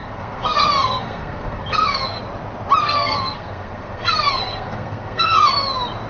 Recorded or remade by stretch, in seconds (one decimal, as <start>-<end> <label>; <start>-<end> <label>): 0.0-2.2 remade; 2.2-2.8 recorded; 2.8-5.5 remade; 5.5-6.1 recorded